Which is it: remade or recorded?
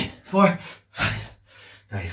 recorded